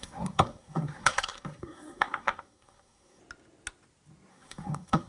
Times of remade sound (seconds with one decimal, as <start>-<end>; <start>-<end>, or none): 0.0-3.2; 4.3-5.1